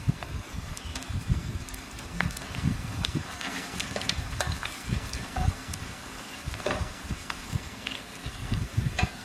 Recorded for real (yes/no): no